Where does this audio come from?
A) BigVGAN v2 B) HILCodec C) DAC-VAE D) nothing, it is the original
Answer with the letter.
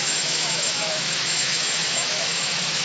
C